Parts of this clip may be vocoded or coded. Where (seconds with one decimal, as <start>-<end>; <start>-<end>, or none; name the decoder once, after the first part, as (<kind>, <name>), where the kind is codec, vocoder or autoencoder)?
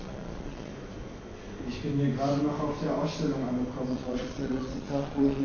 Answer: 0.0-0.7 (vocoder, Vocos); 3.9-5.4